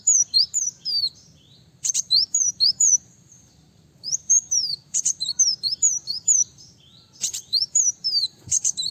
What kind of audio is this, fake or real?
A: fake